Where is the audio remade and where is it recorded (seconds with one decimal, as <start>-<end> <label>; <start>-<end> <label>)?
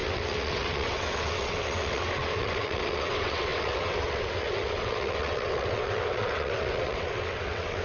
0.0-7.8 remade